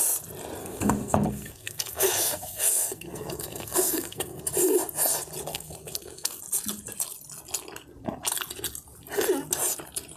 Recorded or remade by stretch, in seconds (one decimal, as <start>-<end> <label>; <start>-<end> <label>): 0.0-0.6 recorded; 0.6-4.4 remade; 4.4-5.5 recorded; 5.5-6.4 remade; 6.4-10.2 recorded